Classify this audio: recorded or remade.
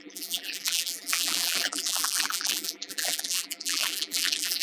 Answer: remade